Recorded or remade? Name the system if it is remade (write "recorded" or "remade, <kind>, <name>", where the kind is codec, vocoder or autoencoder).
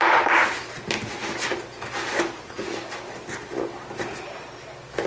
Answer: recorded